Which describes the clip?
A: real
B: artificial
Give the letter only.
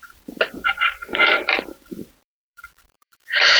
B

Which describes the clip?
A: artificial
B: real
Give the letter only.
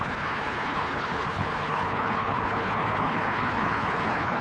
A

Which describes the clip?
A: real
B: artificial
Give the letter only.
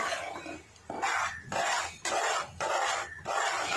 A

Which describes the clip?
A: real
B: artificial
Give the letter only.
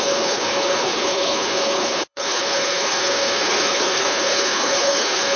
B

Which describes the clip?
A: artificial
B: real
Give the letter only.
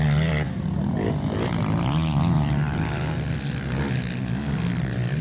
B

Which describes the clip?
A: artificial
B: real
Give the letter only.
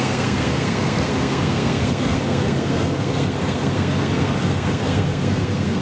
A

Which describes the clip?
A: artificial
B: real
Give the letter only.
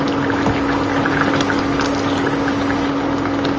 B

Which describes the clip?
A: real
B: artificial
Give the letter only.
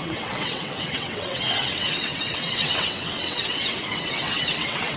B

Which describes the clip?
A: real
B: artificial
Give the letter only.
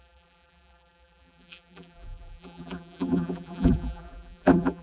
B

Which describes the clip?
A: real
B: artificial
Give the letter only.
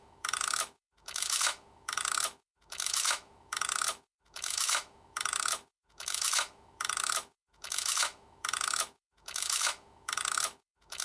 B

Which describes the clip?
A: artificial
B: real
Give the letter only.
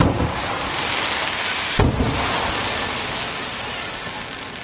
B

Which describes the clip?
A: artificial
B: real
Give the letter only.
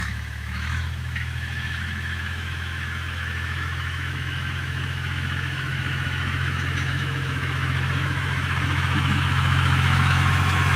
A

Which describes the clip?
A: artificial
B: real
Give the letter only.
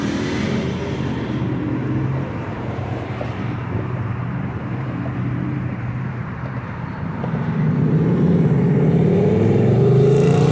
A